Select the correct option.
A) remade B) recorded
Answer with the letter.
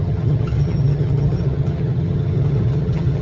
A